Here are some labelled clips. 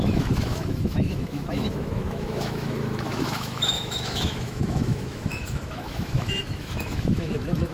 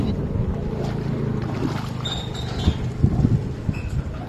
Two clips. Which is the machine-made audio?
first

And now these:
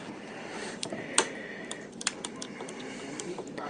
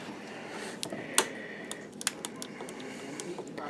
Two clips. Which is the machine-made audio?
first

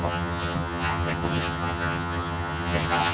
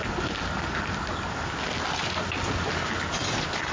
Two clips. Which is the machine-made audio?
first